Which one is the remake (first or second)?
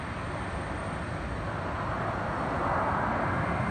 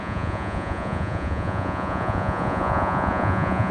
second